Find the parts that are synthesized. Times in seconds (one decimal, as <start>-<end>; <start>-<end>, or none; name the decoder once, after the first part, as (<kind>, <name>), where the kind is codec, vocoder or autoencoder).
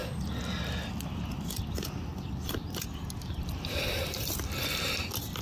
2.1-5.4 (vocoder, BigVGAN v2)